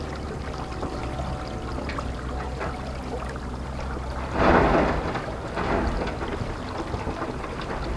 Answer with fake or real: real